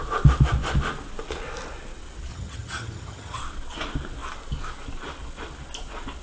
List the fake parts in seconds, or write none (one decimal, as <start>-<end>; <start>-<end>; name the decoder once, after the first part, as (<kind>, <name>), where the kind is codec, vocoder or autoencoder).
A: 2.3-3.4 (vocoder, HiFi-GAN)